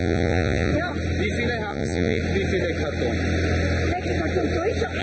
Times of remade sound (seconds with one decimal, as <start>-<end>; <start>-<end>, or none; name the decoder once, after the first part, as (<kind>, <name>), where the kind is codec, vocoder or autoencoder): 0.0-0.7 (vocoder, Vocos); 1.7-2.2

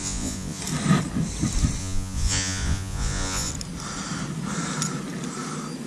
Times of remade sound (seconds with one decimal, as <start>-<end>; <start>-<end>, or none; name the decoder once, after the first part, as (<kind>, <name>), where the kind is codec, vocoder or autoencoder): 0.0-0.6 (vocoder, Vocos); 1.8-3.5

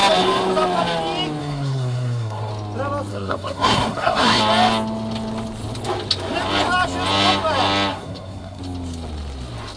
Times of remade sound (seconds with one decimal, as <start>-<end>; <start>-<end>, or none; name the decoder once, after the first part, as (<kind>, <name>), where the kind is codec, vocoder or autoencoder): 1.4-2.5 (codec, SNAC); 3.1-4.4; 7.9-8.6